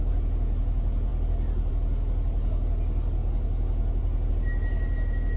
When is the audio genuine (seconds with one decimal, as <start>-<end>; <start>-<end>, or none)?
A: 0.0-5.4